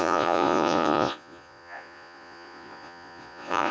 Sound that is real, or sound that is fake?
fake